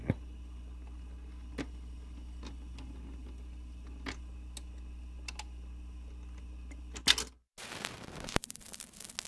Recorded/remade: recorded